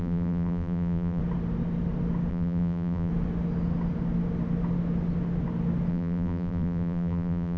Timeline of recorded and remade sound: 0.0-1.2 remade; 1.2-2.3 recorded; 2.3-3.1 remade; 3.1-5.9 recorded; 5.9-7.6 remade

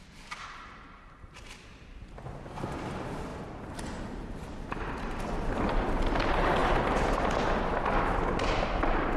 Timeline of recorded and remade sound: 0.0-9.2 recorded